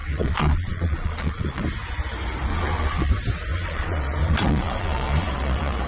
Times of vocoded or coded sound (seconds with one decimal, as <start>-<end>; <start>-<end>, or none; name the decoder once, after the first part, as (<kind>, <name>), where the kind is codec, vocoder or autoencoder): 0.0-1.6 (vocoder, Vocos); 2.5-3.1; 3.5-5.9